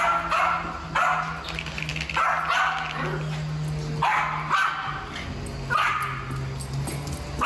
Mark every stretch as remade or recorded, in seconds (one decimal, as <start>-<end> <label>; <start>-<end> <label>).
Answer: 0.0-7.5 recorded

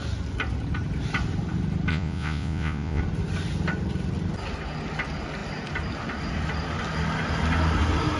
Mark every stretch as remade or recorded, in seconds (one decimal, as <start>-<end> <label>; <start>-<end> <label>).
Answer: 0.0-1.9 recorded; 1.9-3.0 remade; 3.0-8.2 recorded

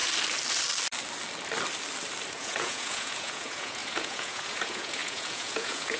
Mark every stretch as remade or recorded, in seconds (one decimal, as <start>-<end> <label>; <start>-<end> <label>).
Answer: 0.0-2.3 recorded; 2.3-6.0 remade

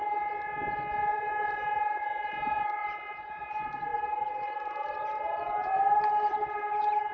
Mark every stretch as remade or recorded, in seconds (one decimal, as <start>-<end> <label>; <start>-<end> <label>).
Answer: 0.0-1.1 recorded; 1.1-2.0 remade; 2.0-3.9 recorded; 3.9-7.1 remade

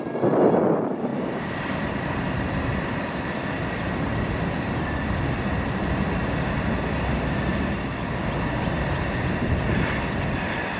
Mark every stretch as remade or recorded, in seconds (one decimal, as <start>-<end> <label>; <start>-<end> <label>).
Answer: 0.0-6.2 remade; 6.2-10.2 recorded; 10.2-10.8 remade

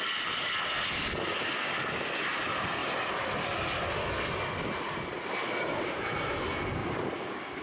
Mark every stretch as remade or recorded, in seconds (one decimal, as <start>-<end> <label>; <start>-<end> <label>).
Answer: 0.0-6.8 recorded; 6.8-7.6 remade

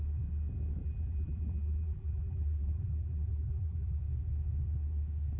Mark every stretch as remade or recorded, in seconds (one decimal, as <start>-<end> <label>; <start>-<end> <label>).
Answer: 0.0-0.8 recorded; 0.8-4.0 remade; 4.0-5.4 recorded

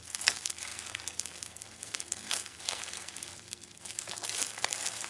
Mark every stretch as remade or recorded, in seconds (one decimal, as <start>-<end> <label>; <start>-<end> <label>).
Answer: 0.0-5.1 remade